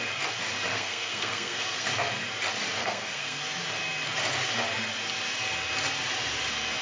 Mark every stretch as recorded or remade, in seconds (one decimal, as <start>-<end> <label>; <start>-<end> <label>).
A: 0.0-0.7 recorded; 0.7-1.9 remade; 1.9-2.8 recorded; 2.8-3.4 remade; 3.4-6.8 recorded